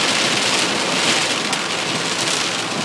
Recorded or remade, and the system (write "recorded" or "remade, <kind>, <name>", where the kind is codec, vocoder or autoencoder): recorded